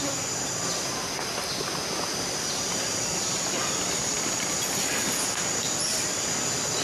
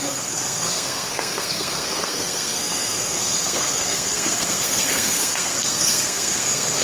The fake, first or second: second